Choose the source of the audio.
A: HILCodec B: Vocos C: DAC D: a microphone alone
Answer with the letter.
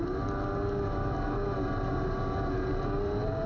D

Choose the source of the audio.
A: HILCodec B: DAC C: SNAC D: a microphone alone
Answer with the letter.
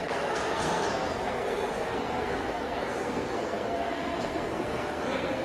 C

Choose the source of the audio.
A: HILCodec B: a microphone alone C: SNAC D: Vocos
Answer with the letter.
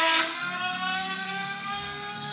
C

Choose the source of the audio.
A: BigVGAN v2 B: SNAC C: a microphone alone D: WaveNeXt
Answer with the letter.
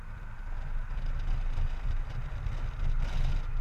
C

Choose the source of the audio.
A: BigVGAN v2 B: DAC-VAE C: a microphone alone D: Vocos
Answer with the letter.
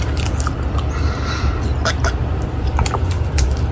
C